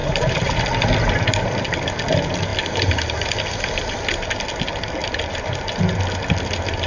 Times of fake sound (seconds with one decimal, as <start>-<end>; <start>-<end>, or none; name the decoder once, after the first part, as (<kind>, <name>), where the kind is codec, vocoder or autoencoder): 0.0-0.5 (vocoder, BigVGAN v2); 5.0-5.6